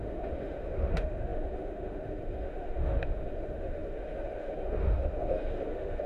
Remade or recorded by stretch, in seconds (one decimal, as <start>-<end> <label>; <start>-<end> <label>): 0.0-6.1 remade